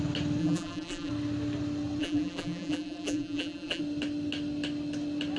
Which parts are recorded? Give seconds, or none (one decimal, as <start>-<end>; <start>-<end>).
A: 0.0-0.4; 1.1-2.0; 3.8-5.4